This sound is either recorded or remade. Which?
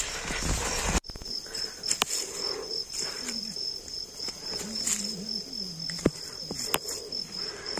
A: recorded